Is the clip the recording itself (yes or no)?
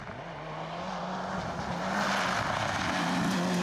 yes